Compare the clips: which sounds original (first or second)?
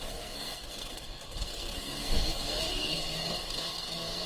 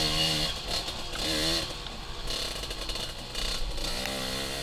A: second